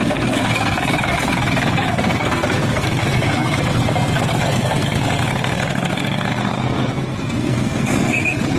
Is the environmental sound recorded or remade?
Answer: remade